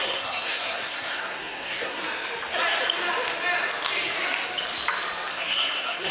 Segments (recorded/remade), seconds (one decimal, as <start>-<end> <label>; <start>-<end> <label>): 0.0-2.0 remade; 2.0-5.3 recorded; 5.3-6.1 remade